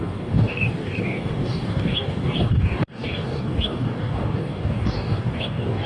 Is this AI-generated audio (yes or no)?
yes